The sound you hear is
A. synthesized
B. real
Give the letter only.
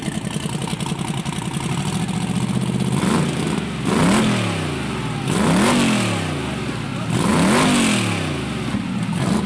B